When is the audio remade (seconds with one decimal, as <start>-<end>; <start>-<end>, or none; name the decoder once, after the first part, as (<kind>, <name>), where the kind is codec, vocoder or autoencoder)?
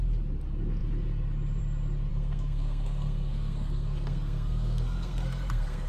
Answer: 2.1-5.9 (codec, SNAC)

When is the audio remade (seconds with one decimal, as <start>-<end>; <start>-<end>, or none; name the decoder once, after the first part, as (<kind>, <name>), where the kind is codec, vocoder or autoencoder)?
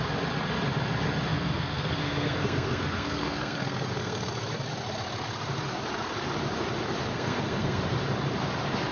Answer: 1.3-4.3 (codec, SNAC); 7.1-7.8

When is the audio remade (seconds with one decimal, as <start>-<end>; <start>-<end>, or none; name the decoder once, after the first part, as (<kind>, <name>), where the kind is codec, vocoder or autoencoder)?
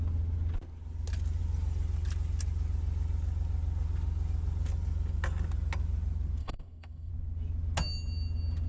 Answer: 6.4-7.1 (codec, SNAC)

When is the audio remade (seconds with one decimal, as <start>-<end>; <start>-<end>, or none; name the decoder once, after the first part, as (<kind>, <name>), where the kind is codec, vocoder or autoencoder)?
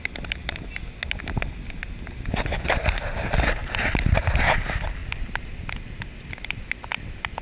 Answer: none